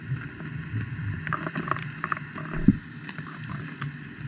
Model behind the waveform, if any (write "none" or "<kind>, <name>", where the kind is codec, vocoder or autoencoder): none